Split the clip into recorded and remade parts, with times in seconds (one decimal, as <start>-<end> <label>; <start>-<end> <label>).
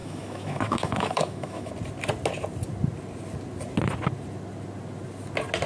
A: 0.0-1.7 remade; 1.7-5.7 recorded